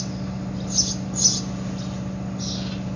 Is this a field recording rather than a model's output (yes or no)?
yes